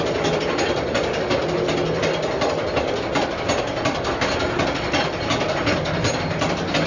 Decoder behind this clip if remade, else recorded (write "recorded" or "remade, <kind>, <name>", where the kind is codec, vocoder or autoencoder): recorded